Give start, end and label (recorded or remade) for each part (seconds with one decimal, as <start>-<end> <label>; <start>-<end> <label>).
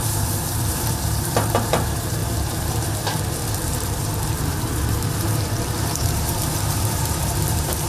0.0-7.9 remade